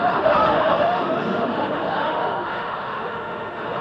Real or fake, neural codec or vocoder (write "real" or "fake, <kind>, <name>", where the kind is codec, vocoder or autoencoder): fake, autoencoder, DAC-VAE